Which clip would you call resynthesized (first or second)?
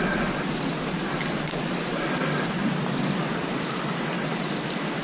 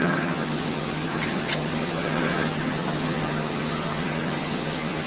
second